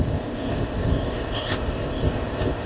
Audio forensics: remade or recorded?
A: remade